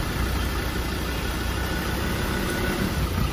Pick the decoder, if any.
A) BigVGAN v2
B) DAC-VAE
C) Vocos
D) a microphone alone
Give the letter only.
D